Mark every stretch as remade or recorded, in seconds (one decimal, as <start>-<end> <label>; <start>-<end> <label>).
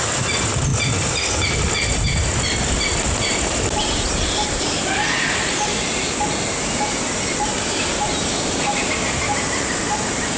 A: 0.0-0.7 remade; 0.7-1.3 recorded; 1.3-10.4 remade